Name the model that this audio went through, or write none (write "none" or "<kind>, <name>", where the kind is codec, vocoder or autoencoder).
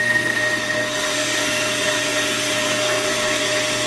codec, SNAC